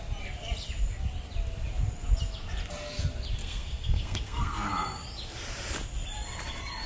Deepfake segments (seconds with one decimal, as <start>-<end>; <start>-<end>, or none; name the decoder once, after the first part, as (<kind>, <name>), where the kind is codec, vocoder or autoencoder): 3.4-4.7 (codec, SNAC)